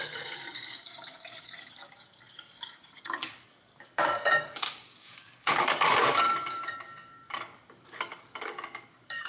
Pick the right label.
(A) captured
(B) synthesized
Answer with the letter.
B